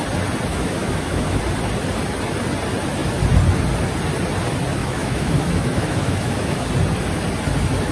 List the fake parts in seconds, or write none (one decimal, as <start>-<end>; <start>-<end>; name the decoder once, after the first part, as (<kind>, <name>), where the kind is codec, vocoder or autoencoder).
0.5-1.4 (autoencoder, DAC-VAE); 4.8-6.7

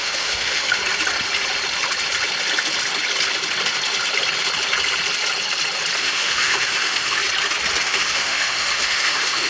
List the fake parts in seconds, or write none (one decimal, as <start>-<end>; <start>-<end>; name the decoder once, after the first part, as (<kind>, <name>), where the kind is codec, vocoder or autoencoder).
0.0-0.8 (autoencoder, DAC-VAE); 6.0-7.2; 7.8-9.5